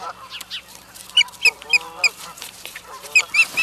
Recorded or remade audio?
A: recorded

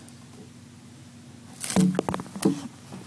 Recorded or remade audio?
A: recorded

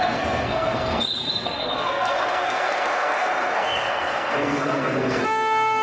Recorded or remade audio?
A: remade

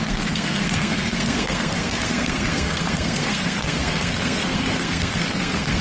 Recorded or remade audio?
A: remade